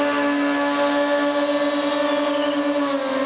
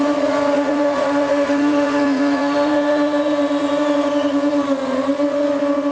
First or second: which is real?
first